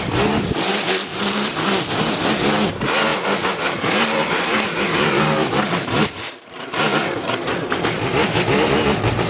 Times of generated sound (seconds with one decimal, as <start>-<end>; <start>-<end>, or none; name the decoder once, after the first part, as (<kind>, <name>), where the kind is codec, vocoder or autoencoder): 1.1-2.0 (vocoder, BigVGAN v2); 3.1-6.8